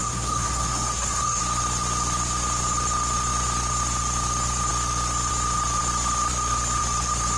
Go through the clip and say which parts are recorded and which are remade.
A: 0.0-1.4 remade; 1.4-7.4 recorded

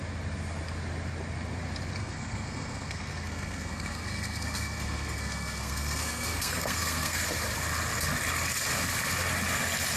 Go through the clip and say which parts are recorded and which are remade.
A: 0.0-2.0 recorded; 2.0-7.2 remade; 7.2-10.0 recorded

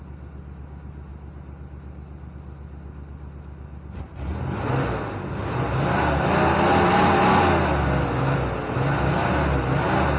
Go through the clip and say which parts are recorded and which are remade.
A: 0.0-10.2 recorded

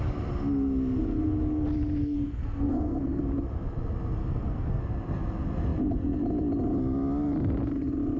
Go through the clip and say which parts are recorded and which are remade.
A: 0.0-2.0 recorded; 2.0-3.2 remade; 3.2-4.2 recorded; 4.2-4.8 remade; 4.8-8.2 recorded

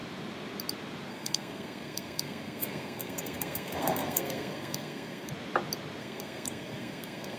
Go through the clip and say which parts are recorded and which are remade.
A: 0.0-1.1 recorded; 1.1-5.3 remade; 5.3-6.0 recorded; 6.0-7.4 remade

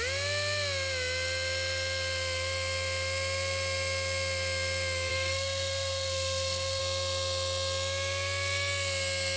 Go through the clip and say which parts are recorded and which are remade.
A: 0.0-5.1 recorded; 5.1-6.8 remade; 6.8-9.4 recorded